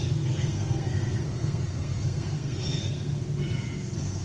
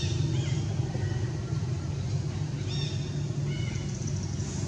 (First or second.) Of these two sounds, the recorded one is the second